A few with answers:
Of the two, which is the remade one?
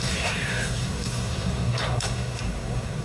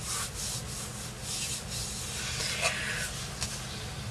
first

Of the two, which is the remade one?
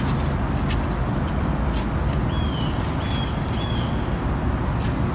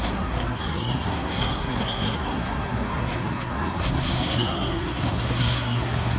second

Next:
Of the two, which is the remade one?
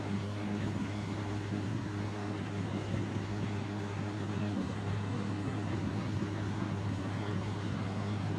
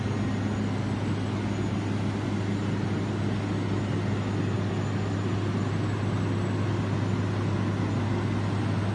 first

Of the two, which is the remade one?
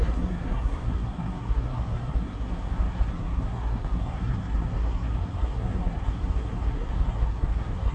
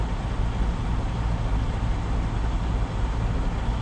first